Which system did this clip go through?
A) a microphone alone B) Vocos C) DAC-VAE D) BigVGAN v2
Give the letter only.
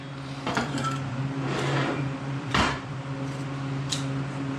D